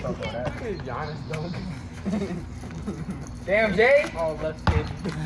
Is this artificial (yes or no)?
no